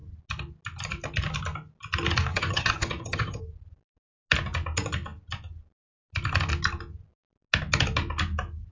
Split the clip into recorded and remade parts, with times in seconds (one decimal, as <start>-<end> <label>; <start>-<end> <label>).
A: 0.0-2.3 recorded; 2.3-3.4 remade; 3.4-8.7 recorded